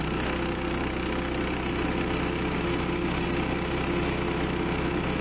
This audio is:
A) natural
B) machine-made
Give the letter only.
A